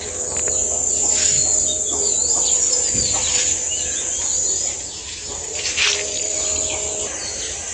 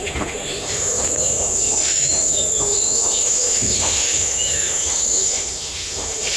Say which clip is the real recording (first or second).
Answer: first